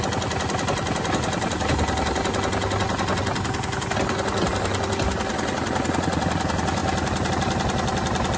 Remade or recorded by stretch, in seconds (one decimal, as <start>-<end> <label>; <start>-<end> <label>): 0.0-8.4 recorded

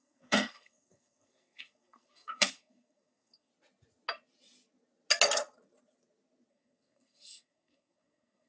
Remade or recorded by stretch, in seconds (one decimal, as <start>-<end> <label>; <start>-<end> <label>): 0.0-3.5 remade; 3.5-6.5 recorded; 6.5-8.5 remade

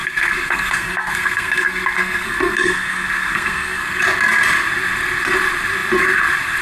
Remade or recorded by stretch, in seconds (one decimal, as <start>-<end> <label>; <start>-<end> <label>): 0.0-4.0 remade; 4.0-6.6 recorded

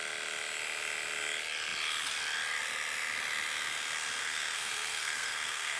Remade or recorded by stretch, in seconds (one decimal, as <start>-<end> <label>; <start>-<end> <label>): 0.0-4.2 recorded; 4.2-5.8 remade

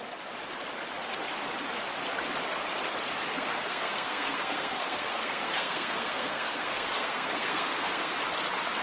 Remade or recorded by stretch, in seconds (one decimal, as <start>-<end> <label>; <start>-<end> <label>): 0.0-3.3 recorded; 3.3-8.2 remade; 8.2-8.8 recorded

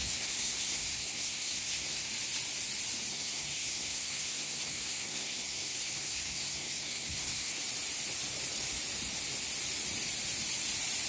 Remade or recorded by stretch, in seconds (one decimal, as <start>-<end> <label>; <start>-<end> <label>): 0.0-2.1 remade; 2.1-3.1 recorded; 3.1-7.6 remade; 7.6-11.1 recorded